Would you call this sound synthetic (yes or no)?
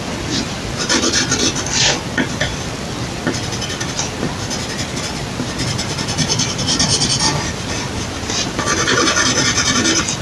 no